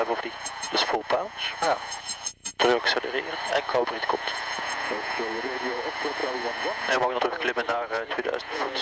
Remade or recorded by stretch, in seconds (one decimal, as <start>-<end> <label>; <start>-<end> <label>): 0.0-2.6 remade; 2.6-3.5 recorded; 3.5-8.8 remade